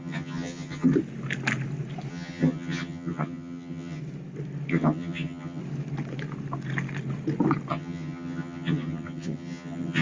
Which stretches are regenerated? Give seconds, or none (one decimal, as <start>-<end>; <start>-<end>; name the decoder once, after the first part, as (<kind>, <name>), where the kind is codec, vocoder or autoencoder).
0.0-0.9 (vocoder, HiFi-GAN); 2.1-4.0; 4.7-5.6; 7.7-10.0